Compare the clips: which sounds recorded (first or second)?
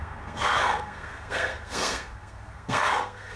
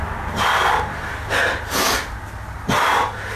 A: second